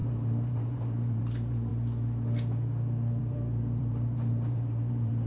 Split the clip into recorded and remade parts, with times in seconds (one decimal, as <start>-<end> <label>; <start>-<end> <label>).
0.0-1.7 remade; 1.7-3.2 recorded; 3.2-5.3 remade